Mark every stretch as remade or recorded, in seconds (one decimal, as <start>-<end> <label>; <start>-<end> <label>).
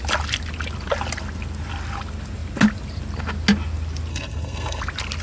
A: 0.0-4.1 recorded; 4.1-4.8 remade; 4.8-5.2 recorded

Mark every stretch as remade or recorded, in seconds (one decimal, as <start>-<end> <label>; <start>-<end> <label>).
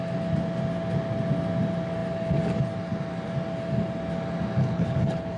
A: 0.0-4.6 recorded; 4.6-5.4 remade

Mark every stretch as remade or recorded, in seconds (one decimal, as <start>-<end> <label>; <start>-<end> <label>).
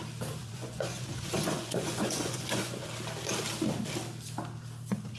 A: 0.0-0.4 recorded; 0.4-2.8 remade; 2.8-5.2 recorded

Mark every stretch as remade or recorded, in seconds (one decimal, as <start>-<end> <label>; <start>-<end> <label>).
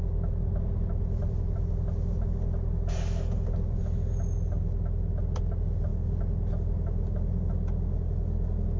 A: 0.0-8.8 recorded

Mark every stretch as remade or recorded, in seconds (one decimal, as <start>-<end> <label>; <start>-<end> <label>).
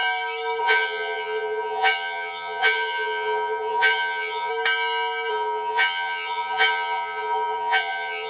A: 0.0-0.6 recorded; 0.6-4.5 remade; 4.5-5.3 recorded; 5.3-8.3 remade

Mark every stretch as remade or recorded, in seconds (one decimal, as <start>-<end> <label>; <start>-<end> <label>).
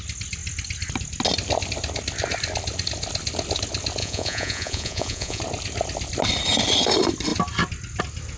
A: 0.0-4.0 recorded; 4.0-5.4 remade; 5.4-8.4 recorded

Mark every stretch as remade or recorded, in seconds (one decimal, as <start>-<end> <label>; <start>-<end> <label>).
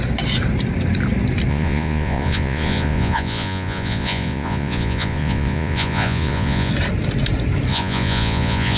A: 0.0-1.5 recorded; 1.5-6.7 remade; 6.7-7.7 recorded; 7.7-8.8 remade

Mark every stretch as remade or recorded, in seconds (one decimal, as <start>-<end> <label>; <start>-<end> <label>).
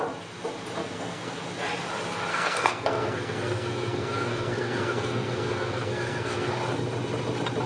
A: 0.0-0.8 recorded; 0.8-1.4 remade; 1.4-2.3 recorded; 2.3-6.5 remade; 6.5-7.7 recorded